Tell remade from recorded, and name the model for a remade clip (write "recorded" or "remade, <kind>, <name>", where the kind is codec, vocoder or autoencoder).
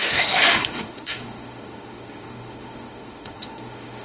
remade, autoencoder, DAC-VAE